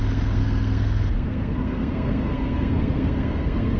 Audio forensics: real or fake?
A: fake